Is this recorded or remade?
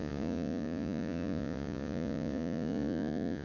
remade